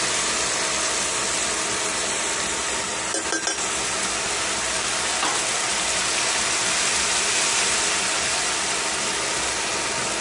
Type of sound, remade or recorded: recorded